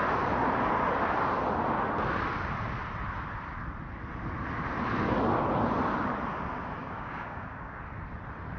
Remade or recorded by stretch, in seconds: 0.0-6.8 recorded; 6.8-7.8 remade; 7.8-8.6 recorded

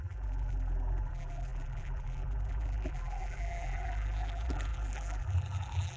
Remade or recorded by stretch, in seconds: 0.0-6.0 remade

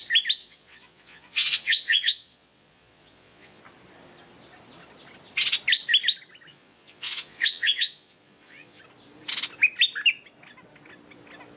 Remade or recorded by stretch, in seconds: 0.0-0.4 recorded; 0.4-3.6 remade; 3.6-6.5 recorded; 6.5-8.8 remade; 8.8-11.6 recorded

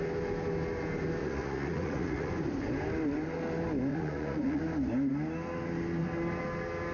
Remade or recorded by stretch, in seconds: 0.0-1.2 recorded; 1.2-2.3 remade; 2.3-3.9 recorded; 3.9-4.6 remade; 4.6-6.9 recorded